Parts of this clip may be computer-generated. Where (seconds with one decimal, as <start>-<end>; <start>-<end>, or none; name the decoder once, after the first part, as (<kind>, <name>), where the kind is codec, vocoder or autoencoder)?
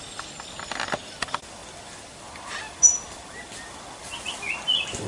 none